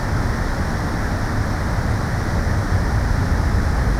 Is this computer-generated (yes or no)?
no